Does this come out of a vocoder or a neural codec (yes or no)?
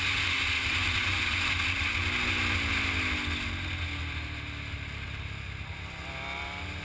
no